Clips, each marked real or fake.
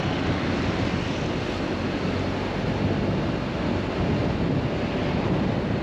real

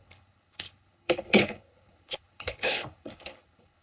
fake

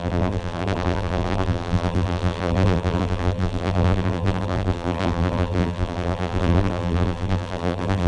fake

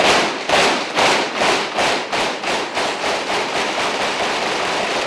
real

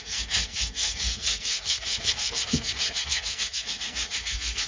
fake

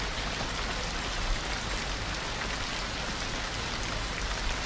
real